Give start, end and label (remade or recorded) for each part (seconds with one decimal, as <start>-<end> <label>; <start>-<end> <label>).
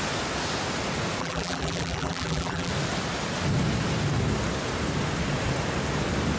0.0-1.2 recorded; 1.2-2.7 remade; 2.7-6.4 recorded